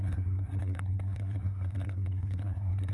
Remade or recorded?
remade